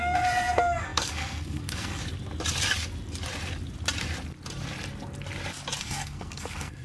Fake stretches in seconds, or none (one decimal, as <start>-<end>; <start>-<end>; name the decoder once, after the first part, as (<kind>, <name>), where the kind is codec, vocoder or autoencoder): 0.0-2.0 (codec, SNAC); 5.8-6.8